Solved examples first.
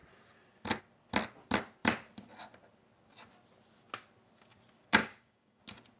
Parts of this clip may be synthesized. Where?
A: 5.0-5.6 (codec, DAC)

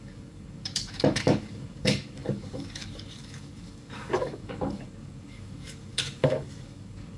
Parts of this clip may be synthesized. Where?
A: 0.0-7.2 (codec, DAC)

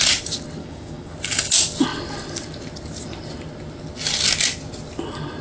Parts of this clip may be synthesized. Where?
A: 0.6-1.1 (codec, DAC)